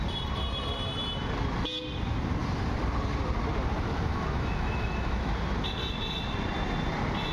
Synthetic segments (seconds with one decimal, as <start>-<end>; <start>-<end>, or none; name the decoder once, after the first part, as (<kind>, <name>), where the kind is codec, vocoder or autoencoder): 4.1-5.3 (autoencoder, DAC-VAE)